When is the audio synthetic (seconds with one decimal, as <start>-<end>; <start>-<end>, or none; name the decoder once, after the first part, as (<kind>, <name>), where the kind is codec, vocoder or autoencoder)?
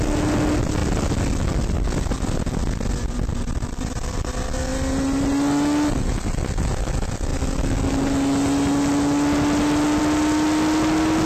none